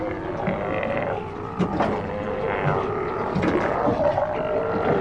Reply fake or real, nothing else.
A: real